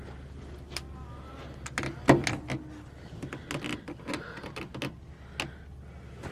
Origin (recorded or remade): recorded